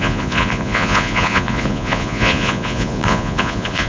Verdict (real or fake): fake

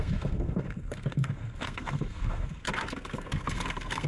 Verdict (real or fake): fake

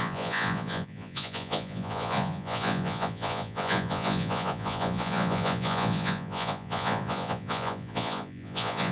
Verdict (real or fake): fake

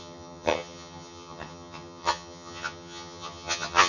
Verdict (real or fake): fake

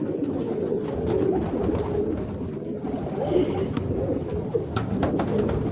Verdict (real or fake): real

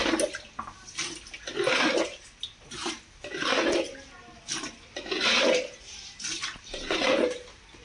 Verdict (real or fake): real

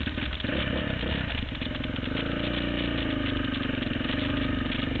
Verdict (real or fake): real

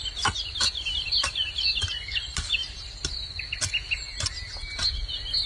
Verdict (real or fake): real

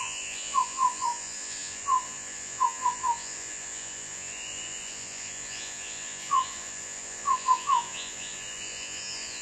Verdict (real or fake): fake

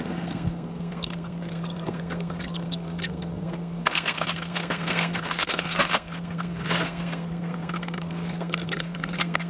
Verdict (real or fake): fake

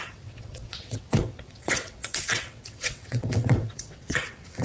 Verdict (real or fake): fake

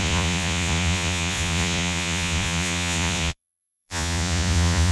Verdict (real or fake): fake